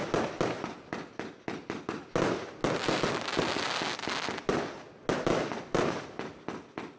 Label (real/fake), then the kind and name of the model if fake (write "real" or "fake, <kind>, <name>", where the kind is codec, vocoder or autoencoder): real